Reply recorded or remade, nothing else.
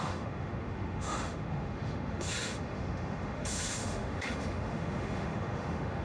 remade